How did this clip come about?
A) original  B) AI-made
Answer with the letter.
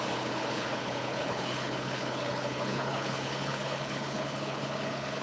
B